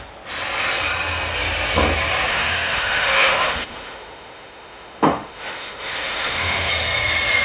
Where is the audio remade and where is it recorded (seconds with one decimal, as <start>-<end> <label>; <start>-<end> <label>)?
0.0-2.3 recorded; 2.3-6.7 remade; 6.7-7.4 recorded